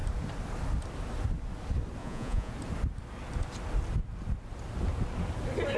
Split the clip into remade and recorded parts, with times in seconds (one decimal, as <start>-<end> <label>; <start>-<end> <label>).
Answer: 0.0-2.0 recorded; 2.0-2.5 remade; 2.5-5.8 recorded